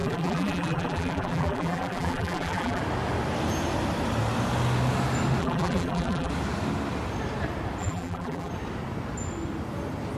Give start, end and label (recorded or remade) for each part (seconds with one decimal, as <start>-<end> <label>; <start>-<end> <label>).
0.0-2.8 remade; 2.8-5.4 recorded; 5.4-6.3 remade; 6.3-7.8 recorded; 7.8-8.5 remade; 8.5-10.2 recorded